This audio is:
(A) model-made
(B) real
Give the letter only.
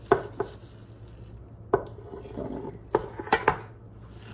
B